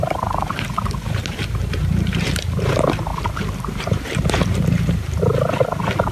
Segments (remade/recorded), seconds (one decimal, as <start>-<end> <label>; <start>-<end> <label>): 0.0-2.7 remade; 2.7-3.1 recorded; 3.1-5.2 remade; 5.2-6.1 recorded